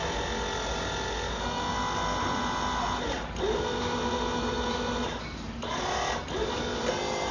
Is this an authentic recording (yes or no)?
yes